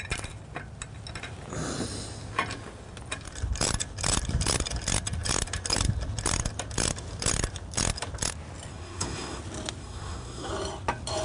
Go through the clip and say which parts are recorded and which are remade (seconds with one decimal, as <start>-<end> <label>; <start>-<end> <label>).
0.0-8.7 recorded; 8.7-9.4 remade; 9.4-9.8 recorded; 9.8-10.5 remade; 10.5-11.2 recorded